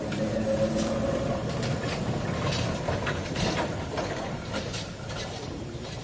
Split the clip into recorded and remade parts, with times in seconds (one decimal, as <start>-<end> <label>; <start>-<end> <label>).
0.0-6.0 remade